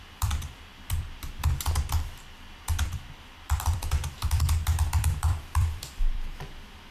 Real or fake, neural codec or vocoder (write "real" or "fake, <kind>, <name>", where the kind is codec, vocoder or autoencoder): fake, vocoder, BigVGAN v2